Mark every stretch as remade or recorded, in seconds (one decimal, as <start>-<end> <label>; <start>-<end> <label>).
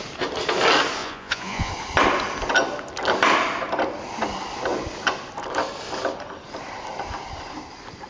0.0-1.0 recorded; 1.0-1.7 remade; 1.7-8.1 recorded